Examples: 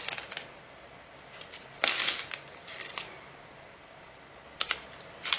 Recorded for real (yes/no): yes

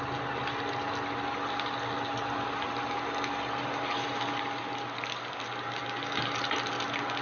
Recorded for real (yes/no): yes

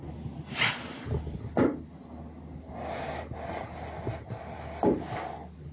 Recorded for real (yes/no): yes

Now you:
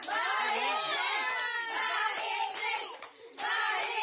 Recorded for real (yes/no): yes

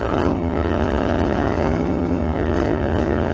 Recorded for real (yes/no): no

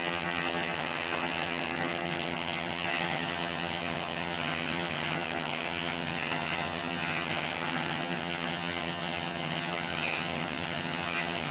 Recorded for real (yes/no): no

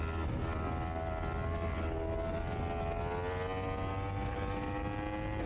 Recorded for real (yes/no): yes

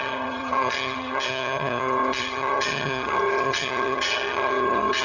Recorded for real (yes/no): no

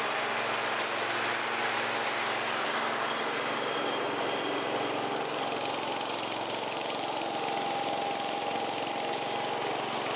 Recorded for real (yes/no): yes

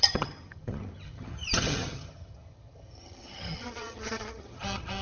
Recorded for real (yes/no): no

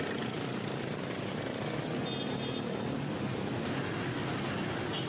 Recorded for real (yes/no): yes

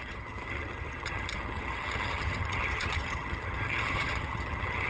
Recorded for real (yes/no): no